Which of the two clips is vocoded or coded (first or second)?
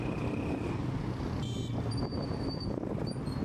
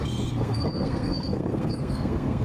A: second